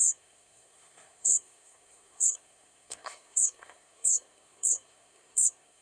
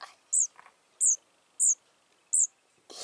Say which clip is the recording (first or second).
second